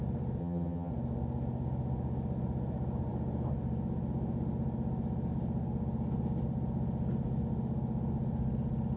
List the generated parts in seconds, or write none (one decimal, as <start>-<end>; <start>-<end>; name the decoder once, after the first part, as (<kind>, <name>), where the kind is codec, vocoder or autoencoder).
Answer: 0.4-0.9 (vocoder, HiFi-GAN)